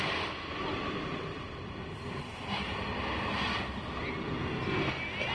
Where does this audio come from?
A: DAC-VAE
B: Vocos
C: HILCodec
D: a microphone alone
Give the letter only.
D